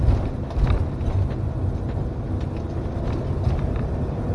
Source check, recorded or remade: recorded